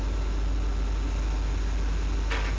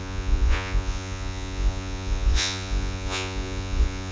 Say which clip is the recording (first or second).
first